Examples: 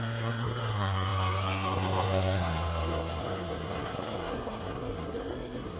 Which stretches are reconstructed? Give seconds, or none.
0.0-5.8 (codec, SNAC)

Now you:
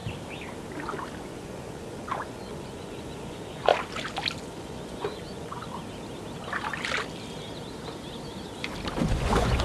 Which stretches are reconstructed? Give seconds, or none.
1.2-3.7 (vocoder, Vocos); 4.4-5.7; 9.1-9.6

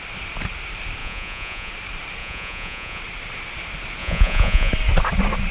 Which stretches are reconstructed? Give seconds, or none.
1.0-1.7 (vocoder, Vocos); 2.2-3.0; 4.0-4.7

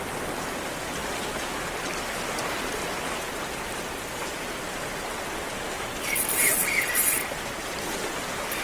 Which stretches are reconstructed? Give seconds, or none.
none